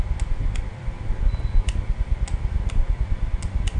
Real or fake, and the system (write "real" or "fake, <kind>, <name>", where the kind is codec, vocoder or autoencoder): real